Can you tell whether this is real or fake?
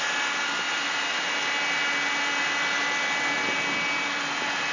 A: real